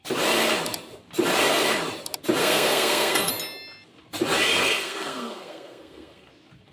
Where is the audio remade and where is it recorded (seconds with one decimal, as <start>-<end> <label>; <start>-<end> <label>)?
0.0-2.4 recorded; 2.4-3.3 remade; 3.3-4.6 recorded; 4.6-6.3 remade; 6.3-6.7 recorded